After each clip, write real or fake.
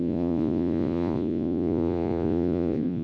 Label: fake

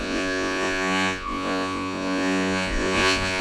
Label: fake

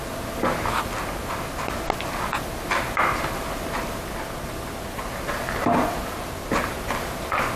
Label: real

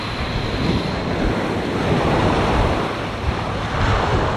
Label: real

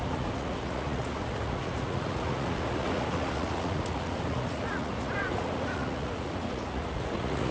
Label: fake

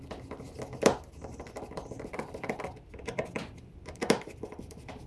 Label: real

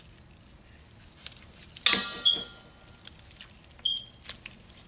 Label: real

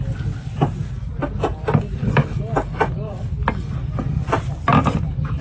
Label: real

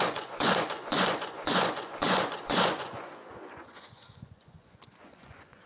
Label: fake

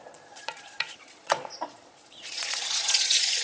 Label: fake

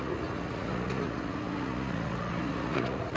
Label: fake